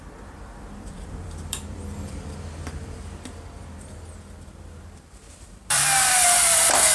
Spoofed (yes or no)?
yes